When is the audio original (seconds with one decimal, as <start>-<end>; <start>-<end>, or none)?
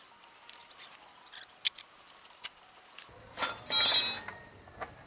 0.0-5.1